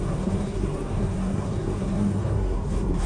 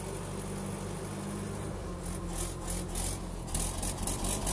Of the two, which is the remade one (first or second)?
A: first